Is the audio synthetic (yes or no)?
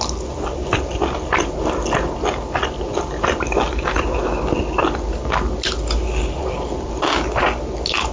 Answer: no